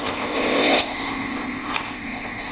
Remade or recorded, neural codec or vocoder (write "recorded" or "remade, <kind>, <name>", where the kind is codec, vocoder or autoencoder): remade, codec, ZipCodec